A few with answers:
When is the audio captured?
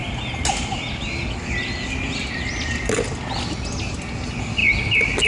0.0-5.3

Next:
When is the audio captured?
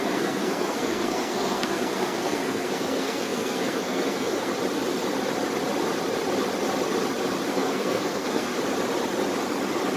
4.5-7.5; 8.5-10.0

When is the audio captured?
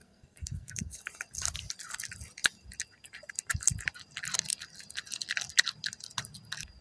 1.0-6.8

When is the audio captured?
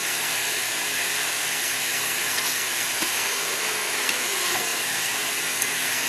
none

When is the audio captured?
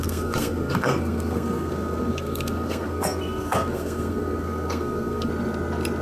5.3-6.0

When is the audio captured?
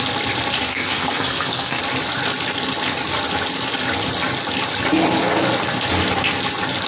0.0-0.7; 1.8-6.9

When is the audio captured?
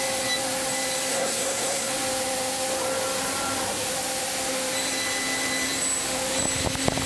0.0-1.1; 1.9-7.1